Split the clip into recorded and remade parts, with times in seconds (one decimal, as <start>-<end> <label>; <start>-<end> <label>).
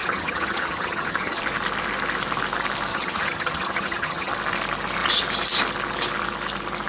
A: 0.0-1.4 remade; 1.4-2.9 recorded; 2.9-4.3 remade; 4.3-6.9 recorded